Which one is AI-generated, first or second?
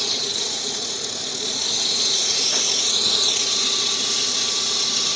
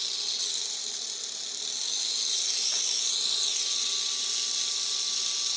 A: first